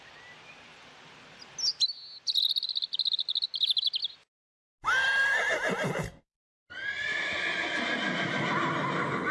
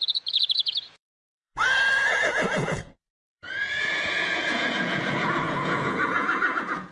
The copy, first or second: second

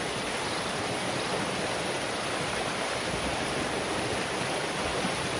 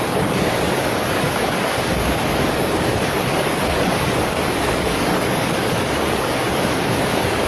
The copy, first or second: second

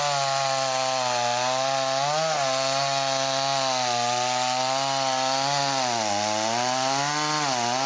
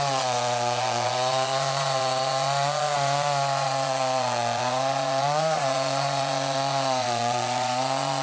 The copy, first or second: second